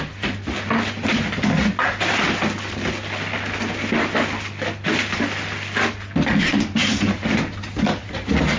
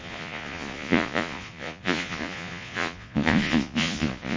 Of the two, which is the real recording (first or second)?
first